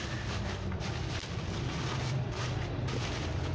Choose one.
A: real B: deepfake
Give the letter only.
A